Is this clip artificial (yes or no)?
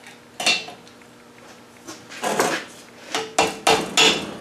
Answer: no